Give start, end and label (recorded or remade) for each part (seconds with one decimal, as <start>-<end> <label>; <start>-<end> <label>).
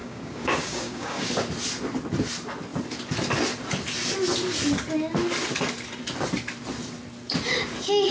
0.0-1.3 remade; 1.3-8.1 recorded